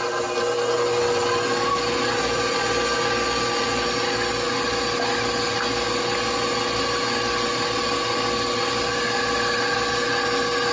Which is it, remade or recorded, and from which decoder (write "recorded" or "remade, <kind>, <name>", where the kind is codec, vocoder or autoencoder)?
recorded